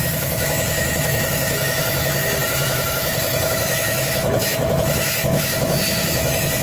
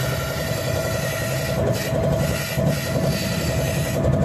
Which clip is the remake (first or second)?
first